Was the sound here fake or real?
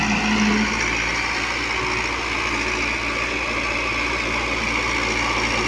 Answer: real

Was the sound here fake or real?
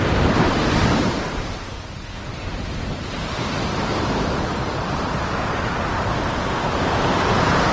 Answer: fake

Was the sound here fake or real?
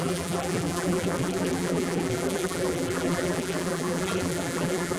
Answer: fake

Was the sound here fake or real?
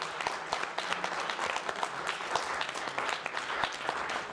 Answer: real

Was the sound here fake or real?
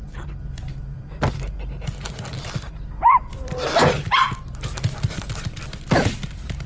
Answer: real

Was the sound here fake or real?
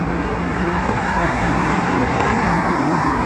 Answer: fake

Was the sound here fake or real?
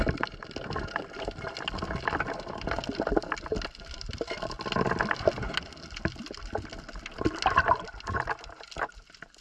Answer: real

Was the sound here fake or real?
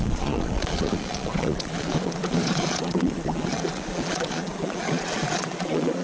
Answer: fake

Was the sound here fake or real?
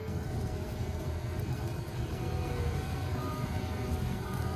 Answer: fake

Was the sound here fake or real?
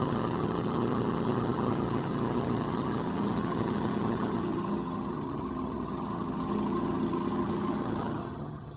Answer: fake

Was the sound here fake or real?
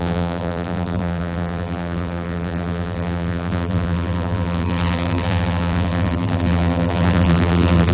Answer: fake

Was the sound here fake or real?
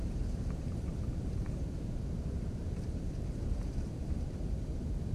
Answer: fake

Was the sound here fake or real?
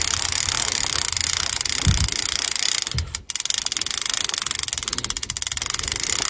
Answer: real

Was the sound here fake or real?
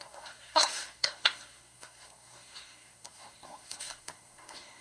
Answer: fake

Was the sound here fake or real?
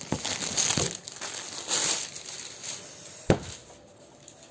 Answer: real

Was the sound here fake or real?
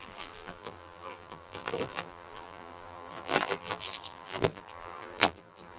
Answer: fake